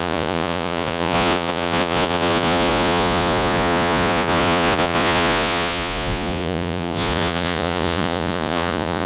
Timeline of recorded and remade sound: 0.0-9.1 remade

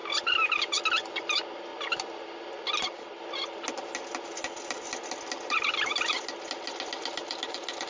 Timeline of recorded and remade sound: 0.0-7.9 recorded

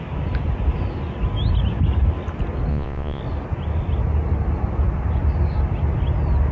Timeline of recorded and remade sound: 0.0-2.7 recorded; 2.7-3.2 remade; 3.2-6.5 recorded

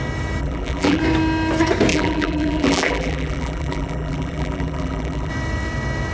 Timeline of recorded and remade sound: 0.0-0.4 recorded; 0.4-1.0 remade; 1.0-1.9 recorded; 1.9-5.3 remade; 5.3-6.1 recorded

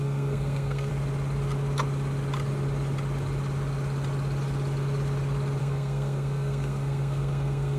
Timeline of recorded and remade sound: 0.0-0.9 remade; 0.9-5.6 recorded; 5.6-7.8 remade

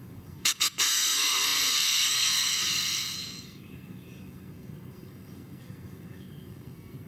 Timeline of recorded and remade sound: 0.0-7.1 remade

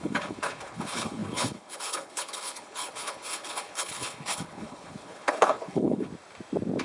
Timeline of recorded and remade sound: 0.0-6.1 remade; 6.1-6.8 recorded

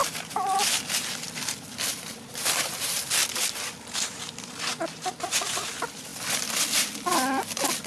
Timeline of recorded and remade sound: 0.0-7.9 remade